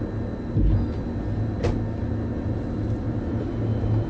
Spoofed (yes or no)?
no